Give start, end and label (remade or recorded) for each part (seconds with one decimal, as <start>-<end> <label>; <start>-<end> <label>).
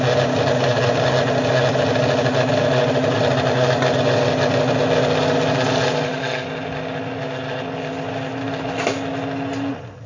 0.0-10.1 recorded